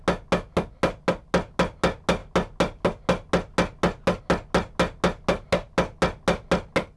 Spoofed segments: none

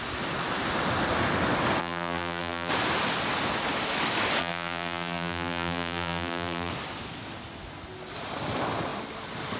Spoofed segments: 1.8-2.7 (vocoder, BigVGAN v2); 4.4-6.7

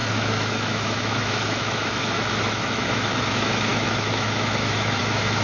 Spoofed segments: 0.0-5.4 (autoencoder, DAC-VAE)

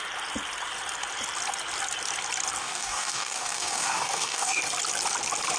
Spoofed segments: 2.6-4.6 (codec, DAC)